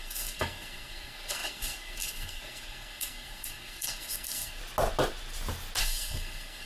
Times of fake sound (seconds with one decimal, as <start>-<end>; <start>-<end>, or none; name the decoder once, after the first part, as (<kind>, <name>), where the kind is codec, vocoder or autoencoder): 0.0-4.6 (codec, SNAC); 5.8-6.7

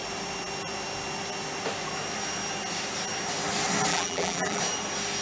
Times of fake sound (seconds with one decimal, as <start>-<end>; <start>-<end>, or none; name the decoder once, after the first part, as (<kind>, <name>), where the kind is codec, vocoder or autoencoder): 3.9-4.6 (vocoder, BigVGAN v2)

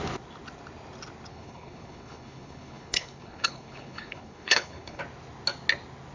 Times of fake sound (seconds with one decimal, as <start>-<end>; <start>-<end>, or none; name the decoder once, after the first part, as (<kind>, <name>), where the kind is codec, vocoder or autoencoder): 1.3-5.0 (codec, HILCodec)

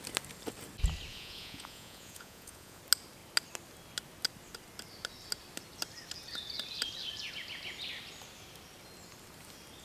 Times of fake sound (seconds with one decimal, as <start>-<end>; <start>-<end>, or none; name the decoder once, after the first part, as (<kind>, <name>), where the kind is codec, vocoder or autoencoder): 1.1-2.8 (vocoder, Vocos)

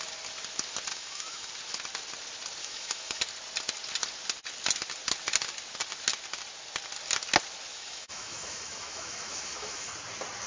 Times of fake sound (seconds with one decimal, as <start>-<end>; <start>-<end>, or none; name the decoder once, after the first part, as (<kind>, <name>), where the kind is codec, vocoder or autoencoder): 0.9-1.5 (autoencoder, DAC-VAE); 2.6-3.2; 7.7-9.9